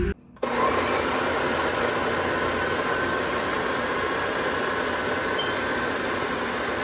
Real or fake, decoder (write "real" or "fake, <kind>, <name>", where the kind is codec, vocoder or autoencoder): real